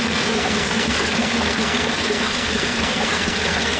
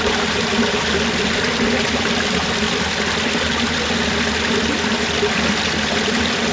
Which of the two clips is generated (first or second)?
first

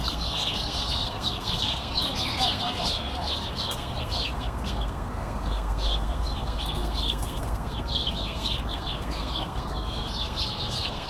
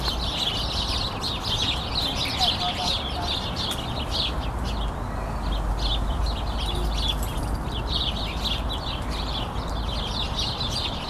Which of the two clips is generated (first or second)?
first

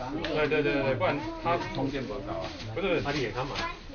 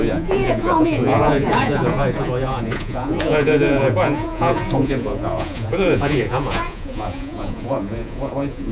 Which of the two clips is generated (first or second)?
second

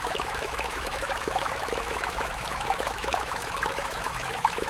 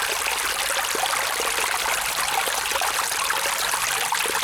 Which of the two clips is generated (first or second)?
first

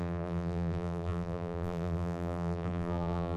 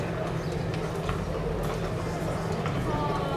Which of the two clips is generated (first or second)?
first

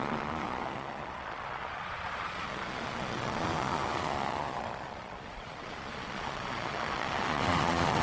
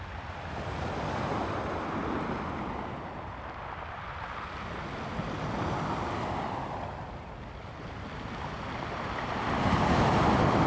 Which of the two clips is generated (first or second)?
first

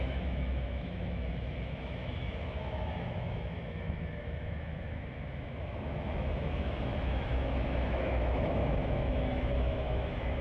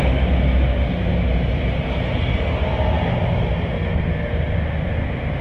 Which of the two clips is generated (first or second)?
first